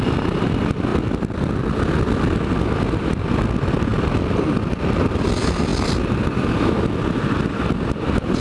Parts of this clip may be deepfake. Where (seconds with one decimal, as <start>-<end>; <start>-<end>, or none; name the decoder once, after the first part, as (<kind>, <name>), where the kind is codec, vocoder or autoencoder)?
none